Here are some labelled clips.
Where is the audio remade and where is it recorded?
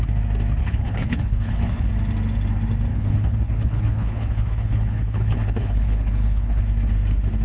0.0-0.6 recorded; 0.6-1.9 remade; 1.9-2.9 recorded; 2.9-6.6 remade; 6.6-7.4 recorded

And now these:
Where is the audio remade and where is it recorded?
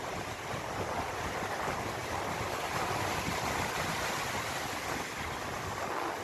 0.0-2.0 recorded; 2.0-5.4 remade; 5.4-6.2 recorded